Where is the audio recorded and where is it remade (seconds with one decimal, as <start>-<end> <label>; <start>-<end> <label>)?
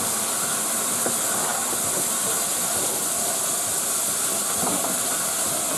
0.0-5.8 recorded